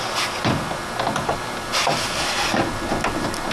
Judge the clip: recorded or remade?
recorded